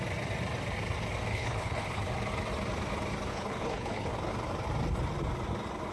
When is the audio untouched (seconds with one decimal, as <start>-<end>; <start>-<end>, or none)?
0.0-1.3; 2.0-3.3; 4.1-5.9